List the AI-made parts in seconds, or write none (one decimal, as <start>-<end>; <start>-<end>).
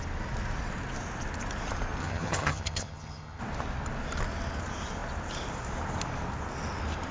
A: 2.0-3.4